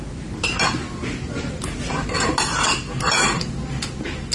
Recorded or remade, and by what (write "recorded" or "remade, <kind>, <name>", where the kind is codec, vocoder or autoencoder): recorded